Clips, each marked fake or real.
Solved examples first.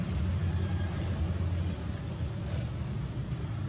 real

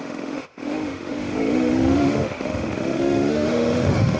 fake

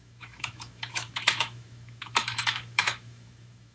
fake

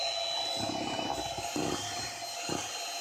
real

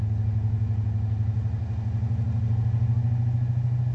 real